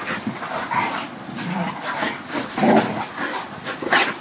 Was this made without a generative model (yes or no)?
yes